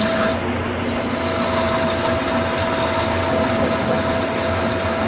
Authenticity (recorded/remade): recorded